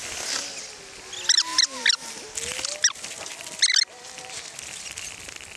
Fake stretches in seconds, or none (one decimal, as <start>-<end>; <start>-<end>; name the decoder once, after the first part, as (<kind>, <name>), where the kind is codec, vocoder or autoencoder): none